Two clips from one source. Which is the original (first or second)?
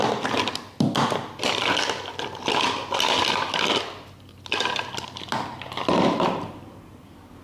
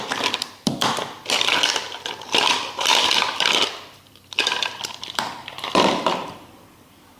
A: first